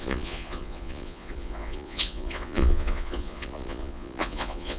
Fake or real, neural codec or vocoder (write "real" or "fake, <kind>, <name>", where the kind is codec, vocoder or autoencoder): fake, vocoder, Vocos